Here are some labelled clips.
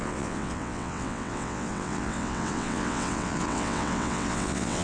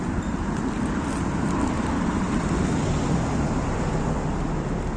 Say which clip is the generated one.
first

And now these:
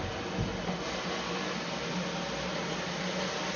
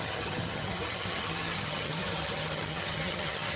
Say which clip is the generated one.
second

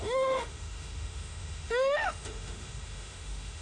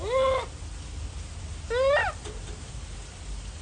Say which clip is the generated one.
first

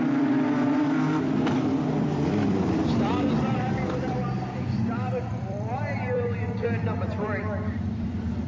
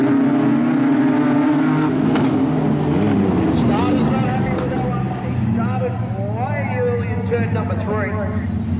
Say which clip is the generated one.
first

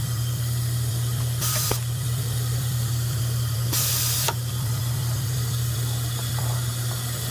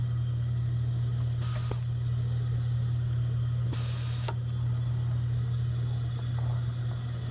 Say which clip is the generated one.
first